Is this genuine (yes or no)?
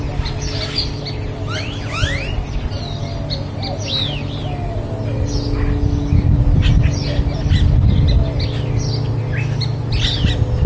yes